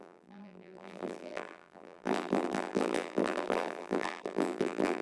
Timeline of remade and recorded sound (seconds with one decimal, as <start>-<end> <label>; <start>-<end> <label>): 0.0-5.0 remade